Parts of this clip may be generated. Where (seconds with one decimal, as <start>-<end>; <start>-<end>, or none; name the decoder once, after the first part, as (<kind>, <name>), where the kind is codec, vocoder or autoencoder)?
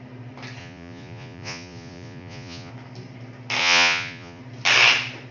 0.6-2.7 (vocoder, Vocos); 3.6-4.4